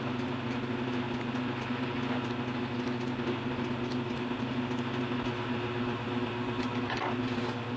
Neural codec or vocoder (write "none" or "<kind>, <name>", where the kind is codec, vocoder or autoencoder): none